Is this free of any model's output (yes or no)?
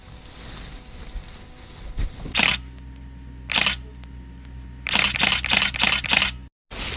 yes